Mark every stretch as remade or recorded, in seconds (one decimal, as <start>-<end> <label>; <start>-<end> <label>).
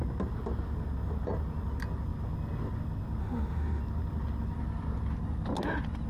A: 0.0-3.2 recorded; 3.2-3.8 remade; 3.8-6.1 recorded